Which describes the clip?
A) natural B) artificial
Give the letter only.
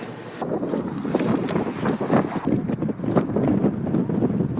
A